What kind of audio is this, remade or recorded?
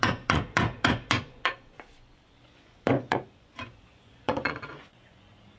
remade